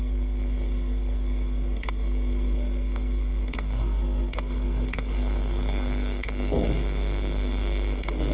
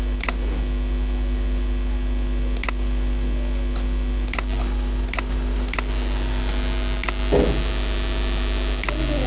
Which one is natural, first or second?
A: second